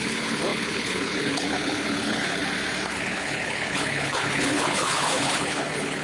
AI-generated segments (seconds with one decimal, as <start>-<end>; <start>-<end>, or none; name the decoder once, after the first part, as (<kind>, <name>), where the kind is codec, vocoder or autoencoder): 0.0-2.4 (codec, HILCodec); 2.9-6.0